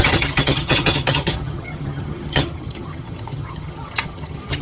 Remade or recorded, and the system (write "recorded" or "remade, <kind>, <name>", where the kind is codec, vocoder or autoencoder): remade, vocoder, HiFi-GAN